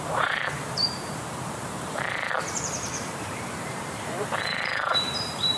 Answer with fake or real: fake